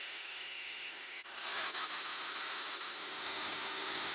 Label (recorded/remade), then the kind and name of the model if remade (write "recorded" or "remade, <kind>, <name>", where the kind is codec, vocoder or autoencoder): remade, autoencoder, DAC-VAE